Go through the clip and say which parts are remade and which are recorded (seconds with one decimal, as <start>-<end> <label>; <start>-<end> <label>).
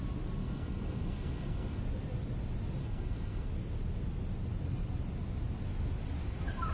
0.0-0.4 recorded; 0.4-1.8 remade; 1.8-2.8 recorded; 2.8-3.5 remade; 3.5-6.7 recorded